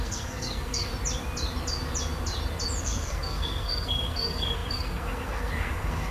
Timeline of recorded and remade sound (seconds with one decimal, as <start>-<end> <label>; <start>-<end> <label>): 0.0-0.9 remade; 0.9-2.8 recorded; 2.8-6.1 remade